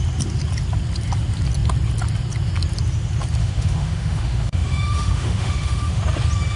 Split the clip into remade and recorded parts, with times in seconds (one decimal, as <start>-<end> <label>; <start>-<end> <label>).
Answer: 0.0-3.4 recorded; 3.4-6.0 remade; 6.0-6.6 recorded